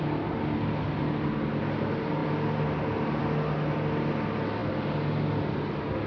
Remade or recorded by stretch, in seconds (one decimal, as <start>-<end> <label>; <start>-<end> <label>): 0.0-6.1 recorded